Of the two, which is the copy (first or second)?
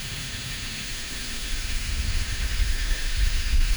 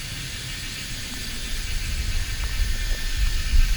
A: first